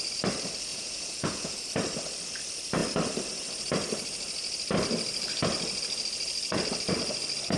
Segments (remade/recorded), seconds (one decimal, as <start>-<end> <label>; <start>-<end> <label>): 0.0-0.7 recorded; 0.7-1.6 remade; 1.6-7.6 recorded